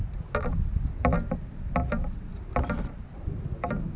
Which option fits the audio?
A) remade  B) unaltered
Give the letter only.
B